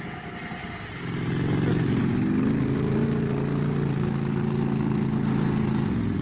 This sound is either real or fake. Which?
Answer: real